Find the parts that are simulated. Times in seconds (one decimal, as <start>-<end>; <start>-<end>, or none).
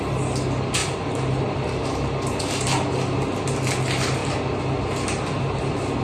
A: none